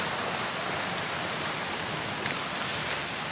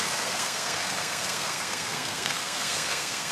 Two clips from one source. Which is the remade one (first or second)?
second